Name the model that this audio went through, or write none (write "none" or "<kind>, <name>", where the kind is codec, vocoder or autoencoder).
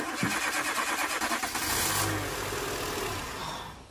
none